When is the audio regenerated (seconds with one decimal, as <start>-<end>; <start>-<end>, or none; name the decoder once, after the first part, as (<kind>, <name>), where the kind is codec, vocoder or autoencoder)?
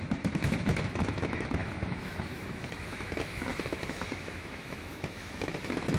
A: 0.0-6.0 (autoencoder, DAC-VAE)